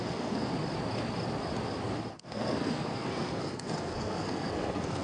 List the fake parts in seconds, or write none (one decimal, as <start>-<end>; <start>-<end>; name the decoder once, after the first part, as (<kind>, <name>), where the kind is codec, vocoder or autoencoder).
0.0-0.5 (codec, SNAC); 2.1-5.0